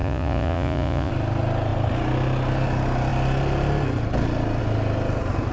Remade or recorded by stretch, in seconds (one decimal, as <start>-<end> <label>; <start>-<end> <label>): 0.0-1.1 remade; 1.1-5.5 recorded

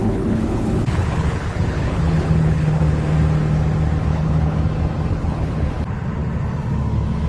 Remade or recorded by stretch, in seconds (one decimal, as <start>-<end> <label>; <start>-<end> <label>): 0.0-2.8 remade; 2.8-4.1 recorded; 4.1-4.6 remade; 4.6-5.1 recorded; 5.1-5.7 remade; 5.7-7.3 recorded

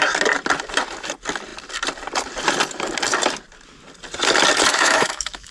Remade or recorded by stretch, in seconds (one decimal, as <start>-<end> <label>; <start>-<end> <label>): 0.0-4.7 recorded; 4.7-5.5 remade

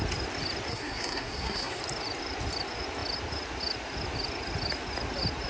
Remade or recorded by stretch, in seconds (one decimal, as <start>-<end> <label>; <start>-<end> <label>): 0.0-0.7 recorded; 0.7-1.8 remade; 1.8-5.5 recorded

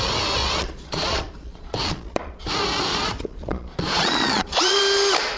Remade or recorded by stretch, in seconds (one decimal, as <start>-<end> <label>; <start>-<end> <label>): 0.0-0.4 recorded; 0.4-2.5 remade; 2.5-2.9 recorded; 2.9-4.8 remade; 4.8-5.4 recorded

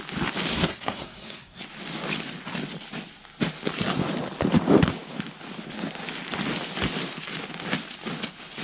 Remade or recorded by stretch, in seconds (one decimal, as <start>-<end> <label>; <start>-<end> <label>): 0.0-0.5 recorded; 0.5-1.6 remade; 1.6-8.6 recorded

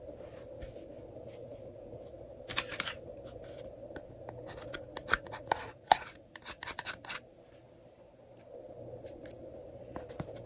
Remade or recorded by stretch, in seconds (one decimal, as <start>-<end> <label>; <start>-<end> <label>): 0.0-1.4 recorded; 1.4-2.0 remade; 2.0-5.0 recorded; 5.0-6.6 remade; 6.6-10.5 recorded

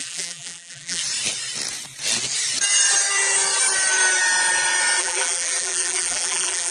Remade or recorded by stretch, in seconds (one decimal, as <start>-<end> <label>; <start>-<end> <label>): 0.0-1.0 remade; 1.0-5.0 recorded; 5.0-6.7 remade